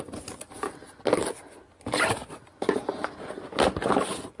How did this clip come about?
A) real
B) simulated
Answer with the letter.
A